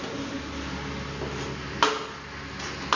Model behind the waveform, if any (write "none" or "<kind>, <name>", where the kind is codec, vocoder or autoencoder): none